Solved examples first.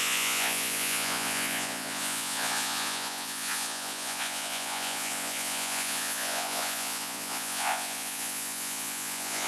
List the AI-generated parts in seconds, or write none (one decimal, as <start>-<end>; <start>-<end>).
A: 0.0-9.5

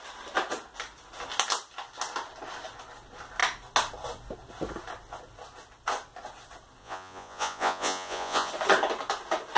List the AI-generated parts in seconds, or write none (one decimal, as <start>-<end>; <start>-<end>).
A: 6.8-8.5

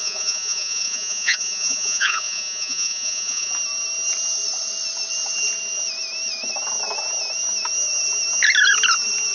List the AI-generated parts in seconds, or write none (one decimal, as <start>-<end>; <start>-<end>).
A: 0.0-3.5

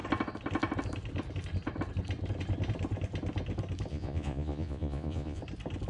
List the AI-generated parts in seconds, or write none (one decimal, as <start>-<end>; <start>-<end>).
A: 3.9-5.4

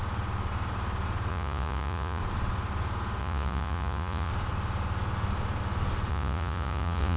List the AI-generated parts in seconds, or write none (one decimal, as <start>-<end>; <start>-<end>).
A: 1.3-2.2; 3.2-4.3; 6.1-7.2

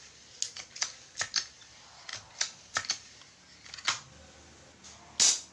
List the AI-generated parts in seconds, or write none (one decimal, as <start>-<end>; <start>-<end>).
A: none